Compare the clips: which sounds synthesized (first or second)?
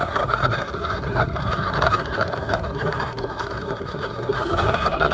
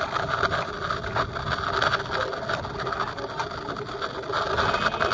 first